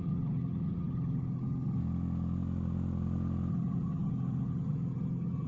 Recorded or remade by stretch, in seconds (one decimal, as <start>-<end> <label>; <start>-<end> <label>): 0.0-1.8 remade; 1.8-3.5 recorded; 3.5-5.5 remade